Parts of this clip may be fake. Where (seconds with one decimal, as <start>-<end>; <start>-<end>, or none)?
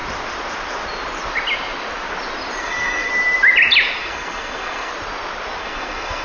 2.6-3.1; 4.0-4.9; 5.6-6.2